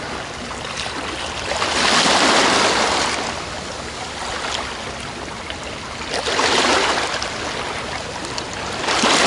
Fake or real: real